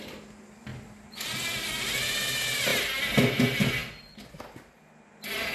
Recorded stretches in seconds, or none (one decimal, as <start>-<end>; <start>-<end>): 0.0-5.5